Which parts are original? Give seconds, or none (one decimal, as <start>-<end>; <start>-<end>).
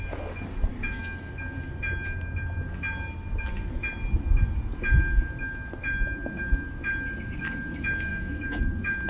0.0-0.7; 1.3-8.1; 8.6-9.1